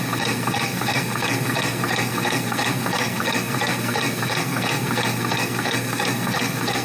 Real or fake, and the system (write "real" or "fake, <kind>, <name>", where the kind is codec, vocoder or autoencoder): fake, codec, SNAC